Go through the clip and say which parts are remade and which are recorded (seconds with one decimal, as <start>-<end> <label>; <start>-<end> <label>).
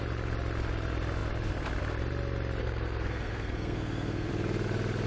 0.0-2.6 recorded; 2.6-4.3 remade; 4.3-5.1 recorded